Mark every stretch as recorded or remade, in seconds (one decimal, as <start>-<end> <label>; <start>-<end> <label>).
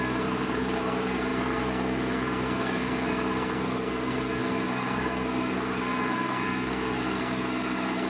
0.0-8.1 remade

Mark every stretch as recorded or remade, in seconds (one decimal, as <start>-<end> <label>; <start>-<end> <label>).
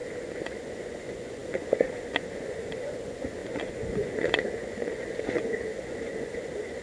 0.0-6.8 remade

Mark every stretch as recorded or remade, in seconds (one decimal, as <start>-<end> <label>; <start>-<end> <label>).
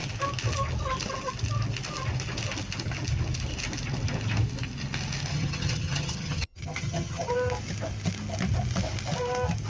0.0-5.3 recorded; 5.3-7.3 remade; 7.3-9.7 recorded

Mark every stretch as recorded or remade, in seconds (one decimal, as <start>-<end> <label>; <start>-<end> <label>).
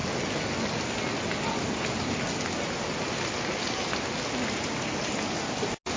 0.0-6.0 recorded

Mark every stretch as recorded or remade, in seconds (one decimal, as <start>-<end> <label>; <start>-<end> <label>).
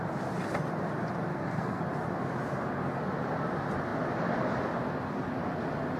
0.0-1.3 recorded; 1.3-1.8 remade; 1.8-6.0 recorded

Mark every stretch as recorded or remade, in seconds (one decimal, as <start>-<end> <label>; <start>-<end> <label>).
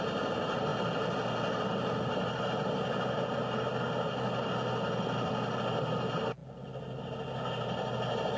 0.0-8.4 recorded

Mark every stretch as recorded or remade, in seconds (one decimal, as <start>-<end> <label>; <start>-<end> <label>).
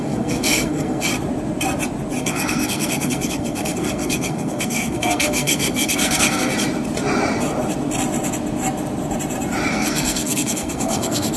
0.0-1.1 remade; 1.1-2.2 recorded; 2.2-6.5 remade; 6.5-9.7 recorded; 9.7-11.4 remade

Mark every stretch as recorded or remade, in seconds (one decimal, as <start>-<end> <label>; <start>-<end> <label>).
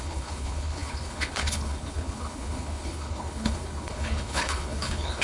0.0-5.2 remade